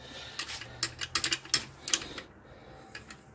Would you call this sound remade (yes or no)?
no